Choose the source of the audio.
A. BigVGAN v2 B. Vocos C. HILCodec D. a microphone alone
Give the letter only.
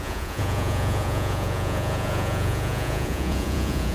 B